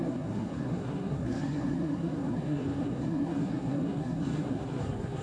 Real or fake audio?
fake